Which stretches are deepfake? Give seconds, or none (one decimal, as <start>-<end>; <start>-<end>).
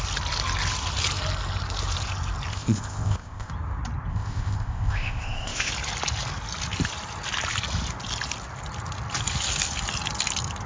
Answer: 2.5-3.5; 4.1-5.7